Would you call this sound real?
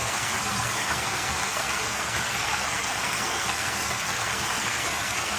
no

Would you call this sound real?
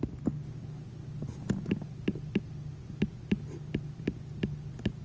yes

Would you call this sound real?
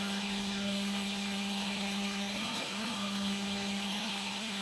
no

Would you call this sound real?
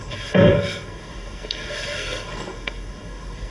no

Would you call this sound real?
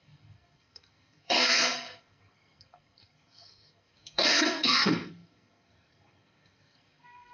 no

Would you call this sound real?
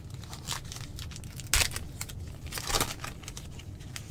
yes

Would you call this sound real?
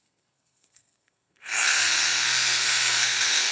no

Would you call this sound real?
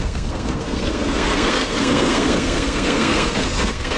no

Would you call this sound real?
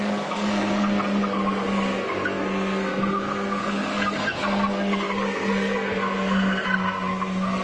no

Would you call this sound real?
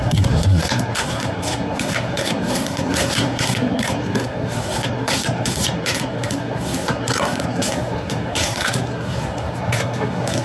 no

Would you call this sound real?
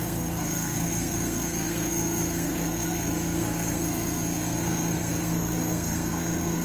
no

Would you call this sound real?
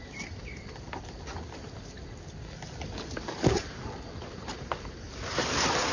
yes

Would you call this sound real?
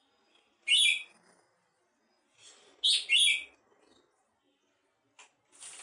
yes